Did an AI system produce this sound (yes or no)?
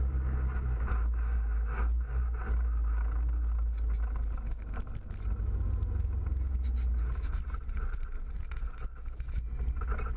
no